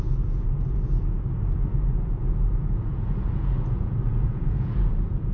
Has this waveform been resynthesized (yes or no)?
yes